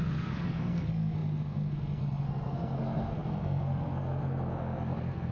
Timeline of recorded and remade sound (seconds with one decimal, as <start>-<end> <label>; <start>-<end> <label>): 0.0-5.3 remade